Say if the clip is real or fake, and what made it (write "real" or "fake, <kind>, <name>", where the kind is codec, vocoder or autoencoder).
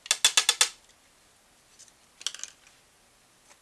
real